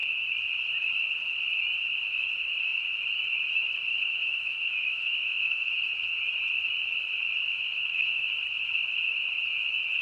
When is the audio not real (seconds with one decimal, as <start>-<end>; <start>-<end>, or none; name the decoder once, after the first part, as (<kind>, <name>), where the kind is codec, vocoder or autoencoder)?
3.9-5.7 (autoencoder, DAC-VAE); 7.5-8.3